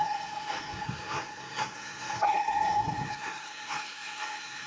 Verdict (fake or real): fake